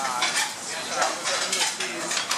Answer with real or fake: real